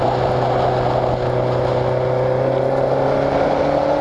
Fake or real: real